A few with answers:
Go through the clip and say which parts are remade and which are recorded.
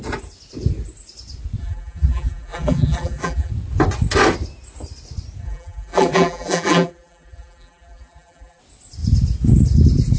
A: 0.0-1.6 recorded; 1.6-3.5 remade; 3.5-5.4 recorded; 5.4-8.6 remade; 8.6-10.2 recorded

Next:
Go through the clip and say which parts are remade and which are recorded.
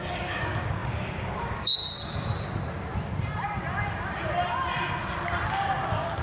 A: 0.0-1.8 remade; 1.8-5.5 recorded; 5.5-6.2 remade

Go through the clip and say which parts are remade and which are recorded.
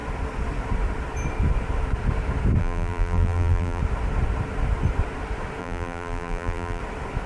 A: 0.0-2.6 recorded; 2.6-3.8 remade; 3.8-5.6 recorded; 5.6-6.8 remade; 6.8-7.3 recorded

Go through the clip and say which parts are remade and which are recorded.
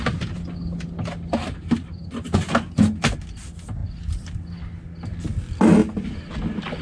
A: 0.0-6.8 recorded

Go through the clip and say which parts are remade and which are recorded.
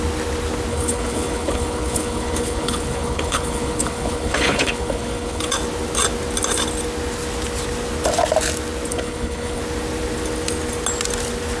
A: 0.0-0.7 recorded; 0.7-5.5 remade; 5.5-8.9 recorded; 8.9-9.6 remade; 9.6-11.6 recorded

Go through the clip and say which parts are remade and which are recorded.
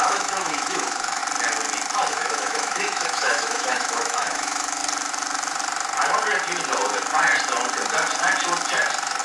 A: 0.0-1.2 remade; 1.2-2.1 recorded; 2.1-4.8 remade; 4.8-9.2 recorded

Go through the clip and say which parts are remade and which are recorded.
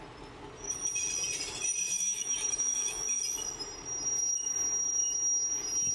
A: 0.0-1.8 recorded; 1.8-3.2 remade; 3.2-5.9 recorded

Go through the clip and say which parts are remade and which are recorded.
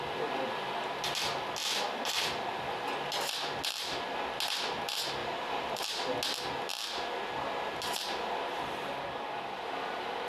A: 0.0-5.2 recorded; 5.2-5.8 remade; 5.8-10.3 recorded